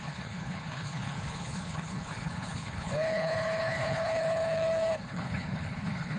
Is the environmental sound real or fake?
fake